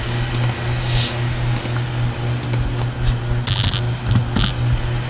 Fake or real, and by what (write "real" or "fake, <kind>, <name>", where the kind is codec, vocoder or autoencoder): real